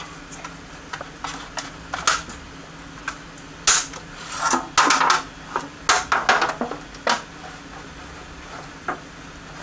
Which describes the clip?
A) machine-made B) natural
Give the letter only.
B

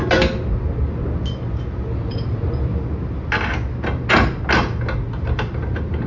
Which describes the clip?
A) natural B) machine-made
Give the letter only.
A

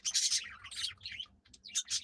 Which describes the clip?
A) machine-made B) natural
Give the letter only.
B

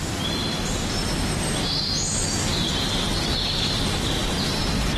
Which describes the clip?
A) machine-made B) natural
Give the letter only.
B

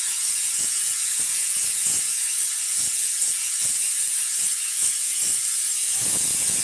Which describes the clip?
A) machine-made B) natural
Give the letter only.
A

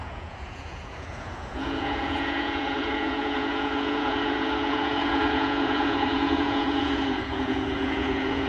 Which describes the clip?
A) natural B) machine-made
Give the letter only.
B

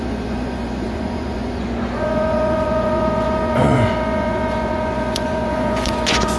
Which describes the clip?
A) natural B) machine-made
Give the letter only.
B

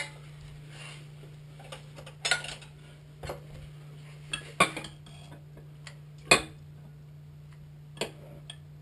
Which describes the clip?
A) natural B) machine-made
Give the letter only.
A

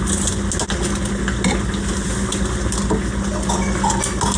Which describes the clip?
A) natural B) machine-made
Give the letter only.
A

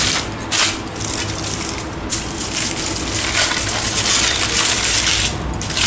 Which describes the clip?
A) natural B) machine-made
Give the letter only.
A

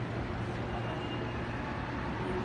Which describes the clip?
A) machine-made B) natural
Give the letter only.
B